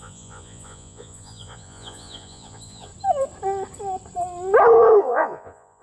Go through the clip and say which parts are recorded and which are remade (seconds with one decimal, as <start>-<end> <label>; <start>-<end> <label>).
0.0-2.9 remade; 2.9-5.0 recorded; 5.0-5.8 remade